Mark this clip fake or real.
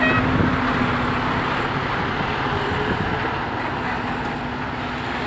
real